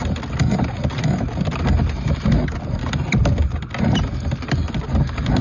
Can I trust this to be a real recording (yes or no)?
yes